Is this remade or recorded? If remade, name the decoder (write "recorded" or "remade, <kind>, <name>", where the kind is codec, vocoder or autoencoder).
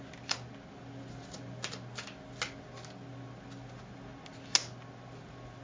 recorded